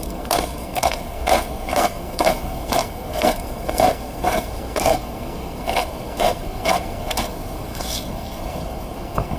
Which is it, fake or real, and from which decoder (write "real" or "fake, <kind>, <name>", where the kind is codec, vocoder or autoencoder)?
fake, codec, SNAC